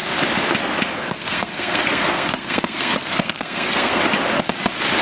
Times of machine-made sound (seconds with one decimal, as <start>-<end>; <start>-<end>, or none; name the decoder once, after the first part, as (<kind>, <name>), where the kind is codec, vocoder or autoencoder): 1.0-4.0 (codec, SNAC)